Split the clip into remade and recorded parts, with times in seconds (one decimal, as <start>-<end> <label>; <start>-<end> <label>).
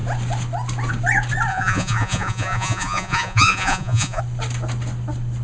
0.0-1.5 recorded; 1.5-4.2 remade; 4.2-5.4 recorded